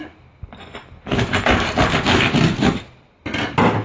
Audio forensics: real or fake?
real